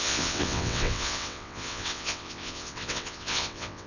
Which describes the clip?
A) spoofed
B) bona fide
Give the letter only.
A